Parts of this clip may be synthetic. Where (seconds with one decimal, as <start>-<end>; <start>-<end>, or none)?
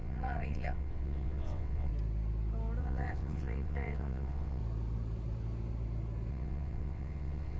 0.0-1.9; 2.8-4.6; 6.3-7.6